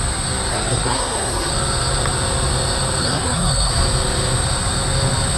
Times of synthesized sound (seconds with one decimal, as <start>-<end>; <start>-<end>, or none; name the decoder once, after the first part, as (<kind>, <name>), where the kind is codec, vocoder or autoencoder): 0.5-1.5 (codec, SNAC); 3.0-3.7